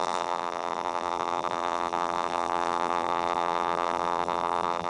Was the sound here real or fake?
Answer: fake